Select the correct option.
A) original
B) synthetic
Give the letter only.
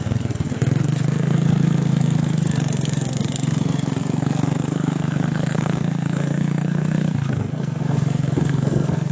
B